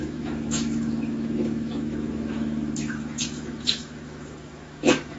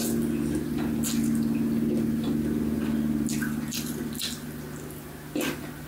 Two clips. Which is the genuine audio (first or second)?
second